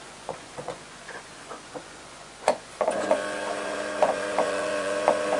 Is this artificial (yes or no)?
yes